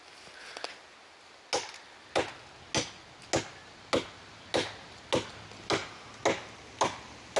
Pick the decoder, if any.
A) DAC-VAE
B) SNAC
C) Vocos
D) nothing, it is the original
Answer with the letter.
D